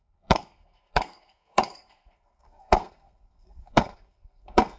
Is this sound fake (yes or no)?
yes